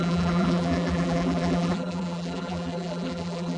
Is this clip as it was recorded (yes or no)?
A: no